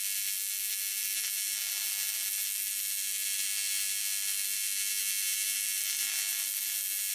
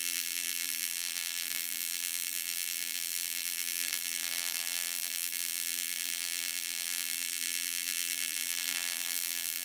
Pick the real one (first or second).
first